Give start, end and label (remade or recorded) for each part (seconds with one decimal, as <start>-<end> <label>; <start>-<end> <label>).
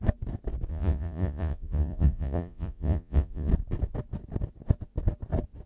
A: 0.0-0.7 recorded; 0.7-3.5 remade; 3.5-5.7 recorded